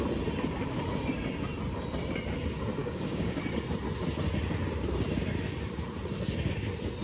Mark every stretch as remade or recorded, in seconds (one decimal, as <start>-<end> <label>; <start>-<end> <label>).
0.0-2.8 recorded; 2.8-3.4 remade; 3.4-7.0 recorded